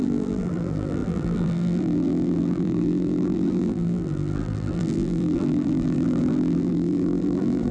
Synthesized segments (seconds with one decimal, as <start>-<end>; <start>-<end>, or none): 0.0-7.7